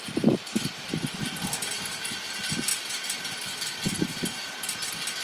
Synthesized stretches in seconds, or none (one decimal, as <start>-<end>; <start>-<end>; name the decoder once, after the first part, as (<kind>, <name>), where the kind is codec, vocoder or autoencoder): none